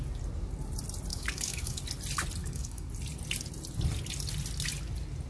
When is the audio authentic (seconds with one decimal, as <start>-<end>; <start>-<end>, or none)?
0.0-1.1; 1.8-2.4; 2.9-5.3